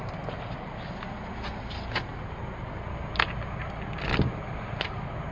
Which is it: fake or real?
real